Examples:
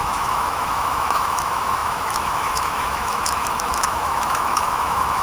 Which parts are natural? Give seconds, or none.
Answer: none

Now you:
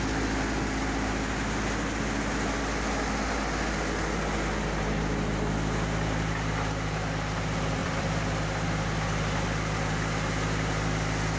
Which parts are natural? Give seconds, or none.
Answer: 0.0-7.8; 9.9-11.4

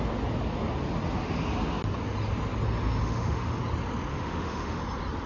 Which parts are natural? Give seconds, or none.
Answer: 0.0-3.0; 3.6-4.1; 4.8-5.3

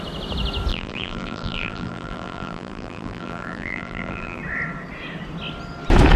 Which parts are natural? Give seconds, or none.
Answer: 0.0-0.7; 4.4-6.2

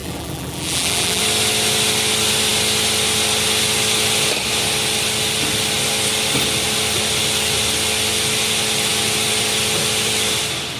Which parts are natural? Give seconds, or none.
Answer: 1.2-10.8

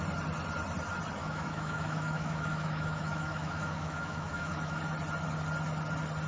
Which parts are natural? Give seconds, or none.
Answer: 0.0-1.2; 4.8-6.3

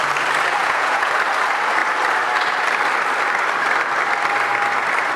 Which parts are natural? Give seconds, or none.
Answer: 0.0-0.6; 1.1-5.2

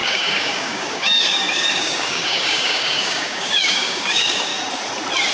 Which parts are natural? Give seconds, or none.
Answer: 4.5-5.3